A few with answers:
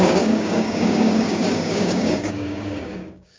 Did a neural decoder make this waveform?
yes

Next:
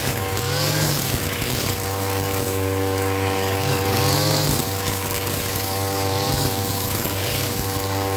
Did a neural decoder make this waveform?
yes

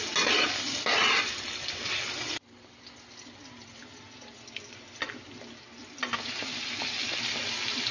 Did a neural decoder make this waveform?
no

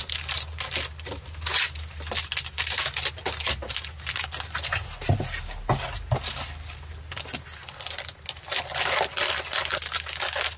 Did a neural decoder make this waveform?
no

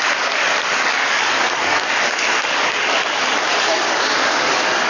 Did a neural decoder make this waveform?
yes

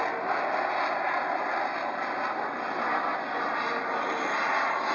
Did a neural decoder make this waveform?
no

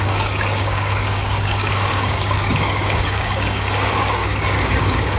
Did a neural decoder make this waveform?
yes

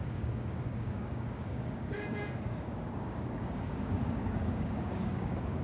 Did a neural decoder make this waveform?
yes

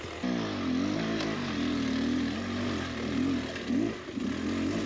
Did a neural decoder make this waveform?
no